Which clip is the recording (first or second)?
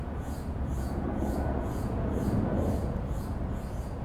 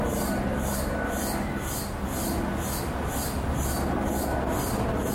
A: second